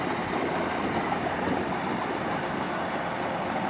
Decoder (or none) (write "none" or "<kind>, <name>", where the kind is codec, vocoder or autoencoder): none